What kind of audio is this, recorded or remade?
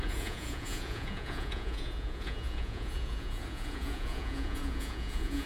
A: remade